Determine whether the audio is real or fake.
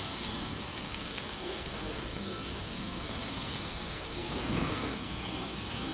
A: fake